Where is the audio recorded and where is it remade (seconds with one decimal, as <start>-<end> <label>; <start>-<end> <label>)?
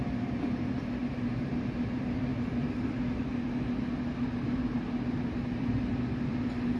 0.0-6.8 recorded